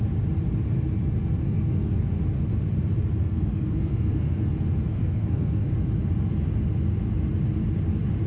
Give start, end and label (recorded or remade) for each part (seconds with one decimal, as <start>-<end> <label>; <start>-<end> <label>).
0.0-1.4 recorded; 1.4-2.0 remade; 2.0-3.2 recorded; 3.2-4.5 remade; 4.5-4.9 recorded; 4.9-5.7 remade; 5.7-8.3 recorded